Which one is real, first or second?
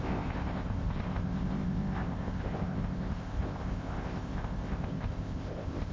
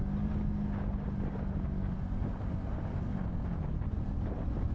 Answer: second